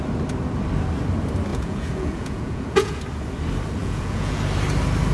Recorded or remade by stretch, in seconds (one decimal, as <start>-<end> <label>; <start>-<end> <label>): 0.0-1.5 recorded; 1.5-3.0 remade; 3.0-3.8 recorded; 3.8-4.4 remade; 4.4-5.1 recorded